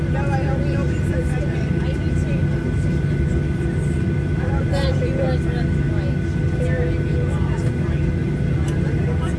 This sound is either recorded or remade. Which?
recorded